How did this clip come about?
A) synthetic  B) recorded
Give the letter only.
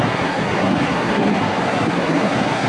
A